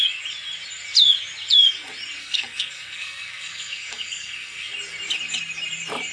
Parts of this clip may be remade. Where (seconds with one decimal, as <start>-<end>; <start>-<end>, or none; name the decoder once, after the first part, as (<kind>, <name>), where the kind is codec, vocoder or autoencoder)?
2.2-4.7 (codec, SNAC)